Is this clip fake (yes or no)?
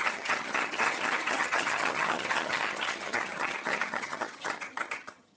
yes